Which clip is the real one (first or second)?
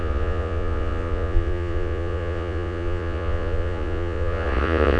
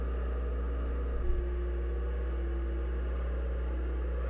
second